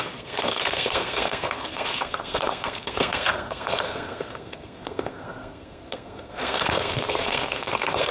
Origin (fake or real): fake